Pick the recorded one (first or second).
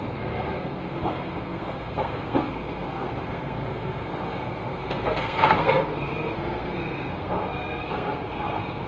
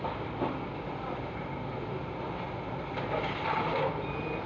second